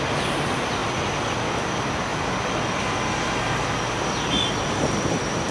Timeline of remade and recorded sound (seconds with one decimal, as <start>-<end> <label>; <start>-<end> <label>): 0.0-2.1 remade; 2.1-5.5 recorded